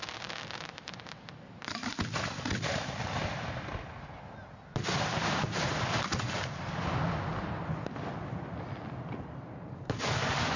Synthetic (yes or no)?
no